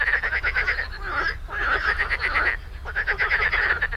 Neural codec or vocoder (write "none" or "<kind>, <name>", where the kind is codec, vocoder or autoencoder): none